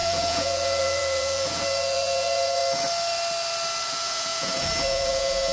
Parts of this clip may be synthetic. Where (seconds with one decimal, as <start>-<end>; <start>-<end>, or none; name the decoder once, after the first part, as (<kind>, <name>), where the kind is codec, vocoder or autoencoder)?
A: 0.0-2.6 (vocoder, Vocos); 3.9-5.5